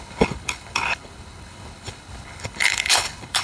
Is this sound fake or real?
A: fake